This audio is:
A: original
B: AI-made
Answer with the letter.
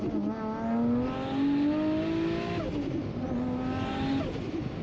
A